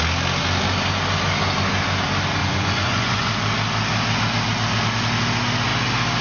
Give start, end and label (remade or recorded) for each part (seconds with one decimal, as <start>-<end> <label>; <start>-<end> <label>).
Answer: 0.0-2.4 recorded; 2.4-3.3 remade; 3.3-6.2 recorded